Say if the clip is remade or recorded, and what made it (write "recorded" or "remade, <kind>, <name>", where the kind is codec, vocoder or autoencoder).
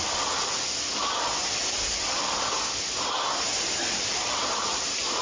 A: recorded